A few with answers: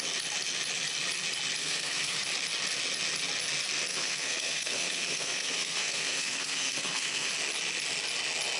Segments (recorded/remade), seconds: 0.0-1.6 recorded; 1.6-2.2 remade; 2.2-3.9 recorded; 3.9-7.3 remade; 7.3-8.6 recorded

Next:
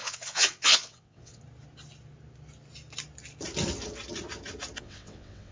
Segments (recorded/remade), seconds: 0.0-1.4 remade; 1.4-4.8 recorded; 4.8-5.5 remade

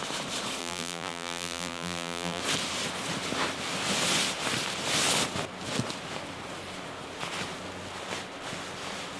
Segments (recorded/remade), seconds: 0.0-0.6 recorded; 0.6-2.4 remade; 2.4-9.2 recorded

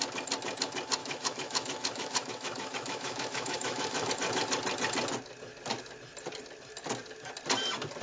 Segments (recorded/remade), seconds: 0.0-1.0 recorded; 1.0-4.1 remade; 4.1-8.0 recorded